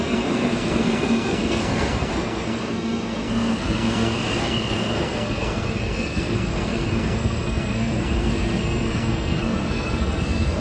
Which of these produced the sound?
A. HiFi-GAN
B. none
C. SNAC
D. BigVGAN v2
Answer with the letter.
C